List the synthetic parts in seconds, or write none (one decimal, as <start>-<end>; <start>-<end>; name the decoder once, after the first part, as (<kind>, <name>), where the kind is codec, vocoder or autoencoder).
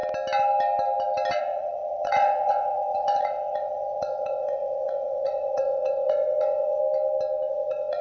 1.4-6.8 (vocoder, WaveNeXt); 7.5-8.0